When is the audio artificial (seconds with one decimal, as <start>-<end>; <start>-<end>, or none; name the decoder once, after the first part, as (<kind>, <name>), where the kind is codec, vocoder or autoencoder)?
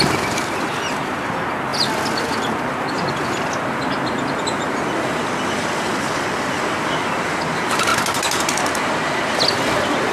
none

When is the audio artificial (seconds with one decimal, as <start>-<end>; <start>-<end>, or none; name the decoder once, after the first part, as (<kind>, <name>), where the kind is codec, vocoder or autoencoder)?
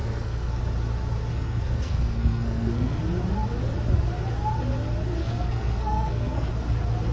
0.0-0.6 (codec, SNAC); 1.3-3.0; 5.2-6.5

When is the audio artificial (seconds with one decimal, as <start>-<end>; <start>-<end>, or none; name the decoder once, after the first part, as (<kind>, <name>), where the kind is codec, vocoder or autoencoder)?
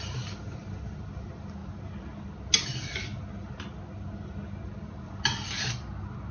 none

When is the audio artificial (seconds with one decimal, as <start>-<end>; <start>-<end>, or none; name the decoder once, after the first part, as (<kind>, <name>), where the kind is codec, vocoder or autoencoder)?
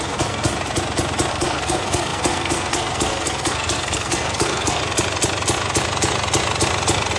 0.0-0.5 (codec, SNAC); 1.3-4.8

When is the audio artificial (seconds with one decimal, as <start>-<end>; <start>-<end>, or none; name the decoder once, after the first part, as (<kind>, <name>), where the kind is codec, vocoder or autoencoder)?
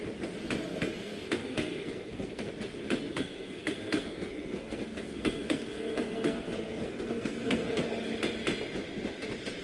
0.7-2.5 (codec, SNAC); 3.1-7.8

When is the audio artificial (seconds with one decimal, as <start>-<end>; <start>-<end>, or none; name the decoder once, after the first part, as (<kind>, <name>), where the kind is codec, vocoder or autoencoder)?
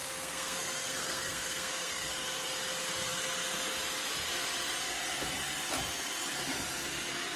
0.0-2.1 (codec, SNAC)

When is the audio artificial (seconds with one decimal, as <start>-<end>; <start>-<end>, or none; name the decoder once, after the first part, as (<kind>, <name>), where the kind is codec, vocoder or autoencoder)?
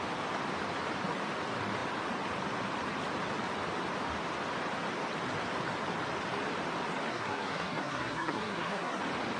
7.1-9.0 (codec, SNAC)